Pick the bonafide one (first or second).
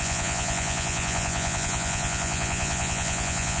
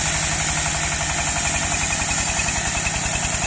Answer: second